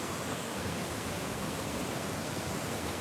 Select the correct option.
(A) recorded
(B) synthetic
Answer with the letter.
B